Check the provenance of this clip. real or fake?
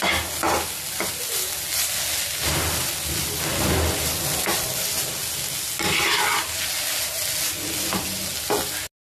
real